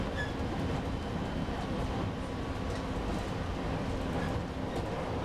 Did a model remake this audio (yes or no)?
no